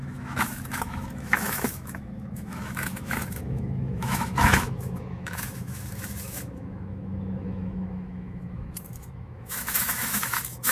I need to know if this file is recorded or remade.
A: remade